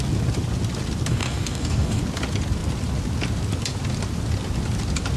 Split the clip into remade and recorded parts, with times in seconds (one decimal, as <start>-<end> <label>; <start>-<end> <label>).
0.0-1.1 recorded; 1.1-2.0 remade; 2.0-5.2 recorded